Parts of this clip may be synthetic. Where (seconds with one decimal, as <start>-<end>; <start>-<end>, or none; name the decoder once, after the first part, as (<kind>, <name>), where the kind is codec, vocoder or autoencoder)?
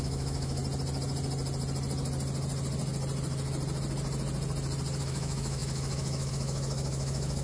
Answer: 0.0-0.6 (autoencoder, DAC-VAE); 5.0-7.4